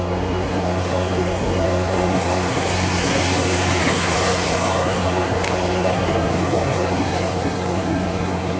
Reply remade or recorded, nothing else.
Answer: remade